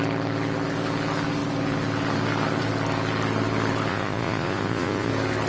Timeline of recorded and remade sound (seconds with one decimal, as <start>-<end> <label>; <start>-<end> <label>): 0.0-3.9 recorded; 3.9-5.1 remade; 5.1-5.5 recorded